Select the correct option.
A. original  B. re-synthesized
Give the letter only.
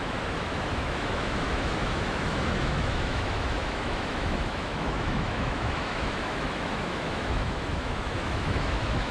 B